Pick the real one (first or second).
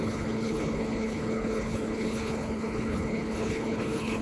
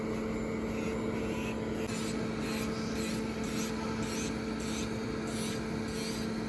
second